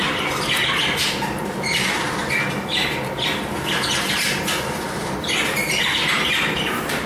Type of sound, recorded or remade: recorded